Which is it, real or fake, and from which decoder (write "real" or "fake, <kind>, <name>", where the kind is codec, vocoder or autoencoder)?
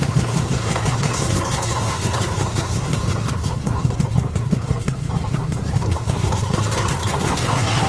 fake, codec, SNAC